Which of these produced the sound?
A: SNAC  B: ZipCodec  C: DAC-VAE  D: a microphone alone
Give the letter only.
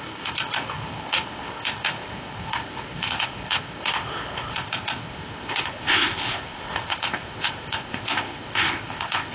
B